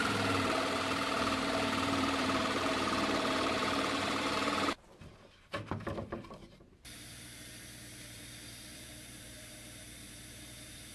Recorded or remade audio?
remade